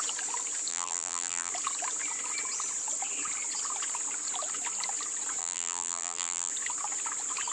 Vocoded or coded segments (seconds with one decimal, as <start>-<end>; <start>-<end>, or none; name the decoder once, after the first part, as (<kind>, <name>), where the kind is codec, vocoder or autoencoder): 0.7-1.5 (vocoder, BigVGAN v2); 5.4-6.5